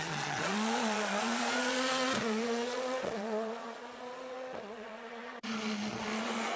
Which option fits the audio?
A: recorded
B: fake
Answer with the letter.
B